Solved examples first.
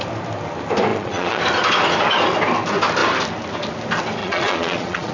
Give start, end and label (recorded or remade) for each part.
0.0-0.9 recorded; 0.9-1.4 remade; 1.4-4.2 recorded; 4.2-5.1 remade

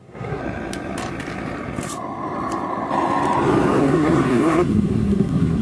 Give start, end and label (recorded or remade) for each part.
0.0-0.4 remade; 0.4-3.8 recorded; 3.8-5.6 remade

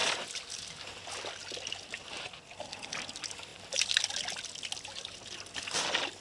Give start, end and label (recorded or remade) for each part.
0.0-6.2 recorded

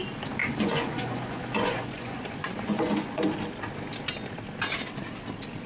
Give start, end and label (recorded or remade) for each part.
0.0-0.4 recorded; 0.4-3.2 remade; 3.2-5.7 recorded

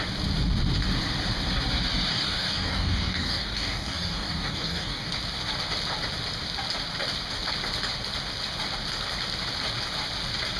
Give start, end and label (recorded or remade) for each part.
0.0-2.1 recorded; 2.1-5.1 remade; 5.1-10.6 recorded

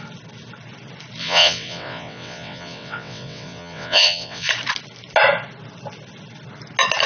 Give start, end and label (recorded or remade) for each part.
0.0-1.2 recorded; 1.2-4.5 remade; 4.5-7.1 recorded

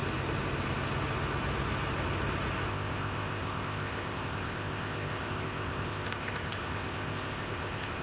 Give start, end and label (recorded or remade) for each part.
0.0-2.7 recorded; 2.7-8.0 remade